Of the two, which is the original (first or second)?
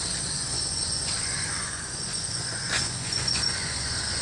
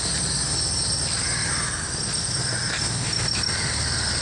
second